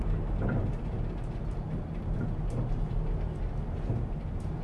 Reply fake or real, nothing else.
real